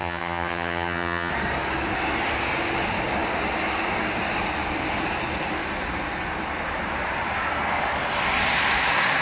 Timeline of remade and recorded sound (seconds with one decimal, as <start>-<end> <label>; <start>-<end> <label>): 0.0-1.3 remade; 1.3-9.2 recorded